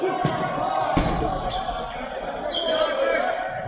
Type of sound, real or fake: real